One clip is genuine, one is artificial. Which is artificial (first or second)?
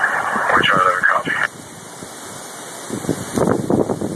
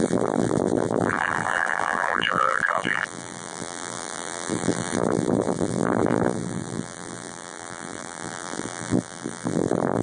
second